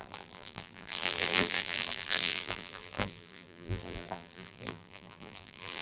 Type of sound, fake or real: fake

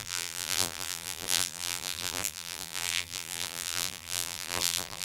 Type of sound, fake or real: fake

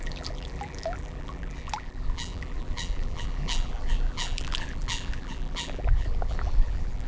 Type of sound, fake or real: fake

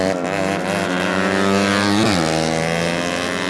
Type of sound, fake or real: real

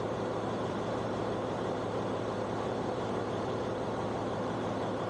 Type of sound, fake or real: fake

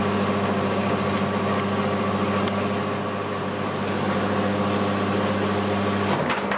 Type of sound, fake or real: real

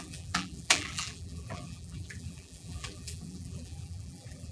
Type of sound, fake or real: fake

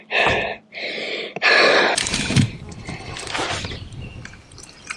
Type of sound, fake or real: fake